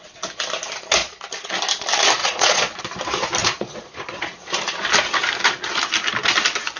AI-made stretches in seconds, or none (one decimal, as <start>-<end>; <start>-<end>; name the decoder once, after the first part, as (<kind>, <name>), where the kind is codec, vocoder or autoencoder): 1.0-1.5 (vocoder, Vocos); 2.2-2.8; 3.4-4.5